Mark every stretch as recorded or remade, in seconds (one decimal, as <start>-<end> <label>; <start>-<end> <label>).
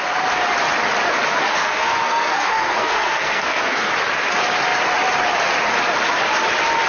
0.0-1.6 recorded; 1.6-3.9 remade; 3.9-6.9 recorded